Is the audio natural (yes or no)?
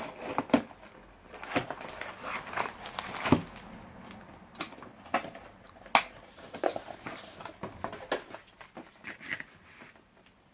yes